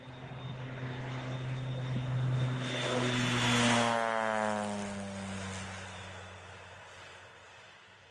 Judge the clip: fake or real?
real